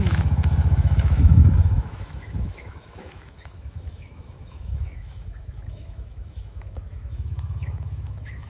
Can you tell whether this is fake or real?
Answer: fake